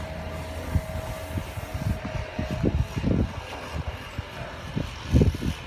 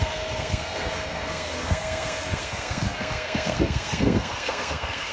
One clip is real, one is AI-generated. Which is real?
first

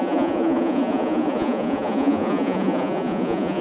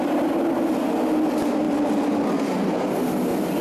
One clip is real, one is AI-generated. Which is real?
second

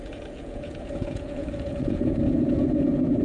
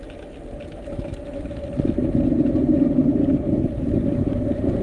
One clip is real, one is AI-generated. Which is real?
second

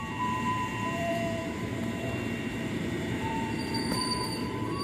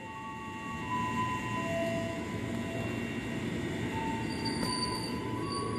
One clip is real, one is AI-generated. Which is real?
second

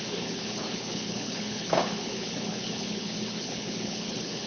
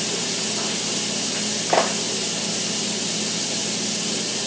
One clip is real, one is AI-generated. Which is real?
second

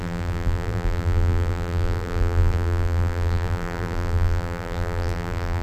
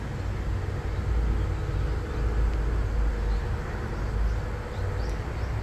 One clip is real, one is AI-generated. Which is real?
second